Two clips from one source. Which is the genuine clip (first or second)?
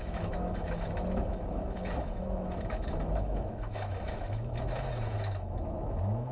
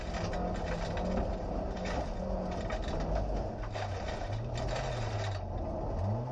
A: second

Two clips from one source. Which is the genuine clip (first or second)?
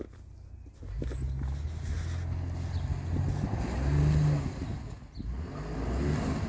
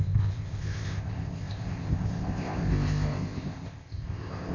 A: first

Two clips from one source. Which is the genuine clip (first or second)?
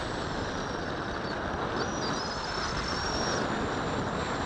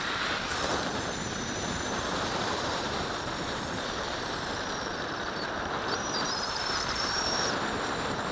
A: first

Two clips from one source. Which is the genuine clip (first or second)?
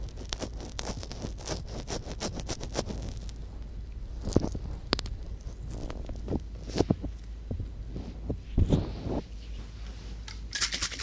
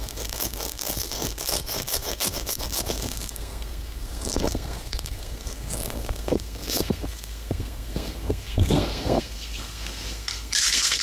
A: first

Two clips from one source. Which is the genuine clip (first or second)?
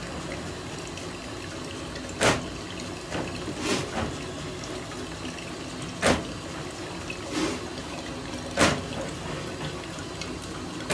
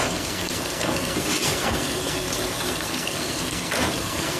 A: first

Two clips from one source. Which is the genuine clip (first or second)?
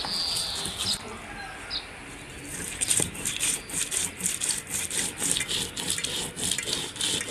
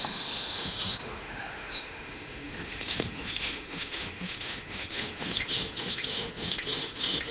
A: first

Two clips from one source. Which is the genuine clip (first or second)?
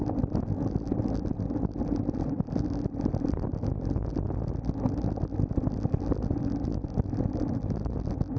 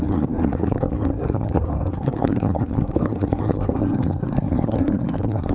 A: first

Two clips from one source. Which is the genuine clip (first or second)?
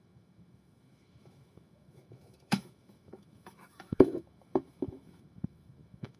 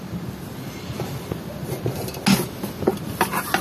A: second